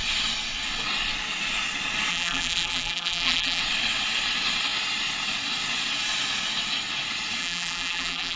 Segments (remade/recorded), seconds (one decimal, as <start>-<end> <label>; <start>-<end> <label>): 0.0-2.1 recorded; 2.1-3.6 remade; 3.6-7.4 recorded; 7.4-8.4 remade